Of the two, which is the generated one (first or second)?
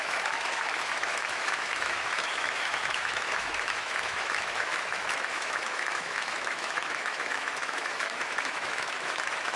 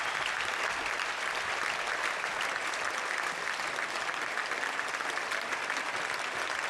first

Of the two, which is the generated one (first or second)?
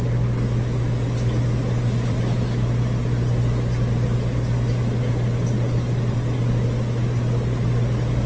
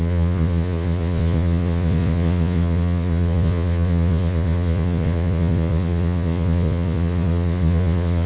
second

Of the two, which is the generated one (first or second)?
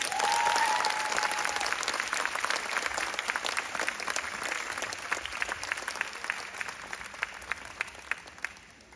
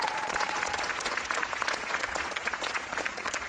second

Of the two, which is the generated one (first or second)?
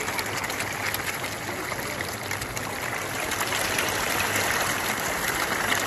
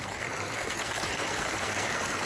second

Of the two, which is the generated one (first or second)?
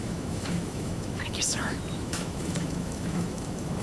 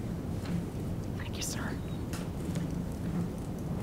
first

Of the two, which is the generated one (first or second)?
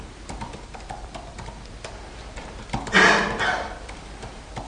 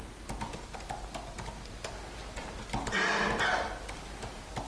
first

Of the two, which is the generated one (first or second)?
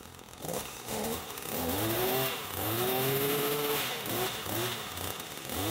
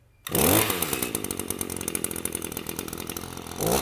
first